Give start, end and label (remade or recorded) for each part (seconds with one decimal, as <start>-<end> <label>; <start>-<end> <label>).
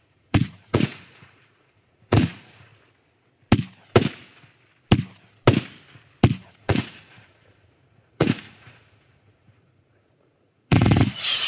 0.0-2.7 remade; 2.7-6.4 recorded; 6.4-11.5 remade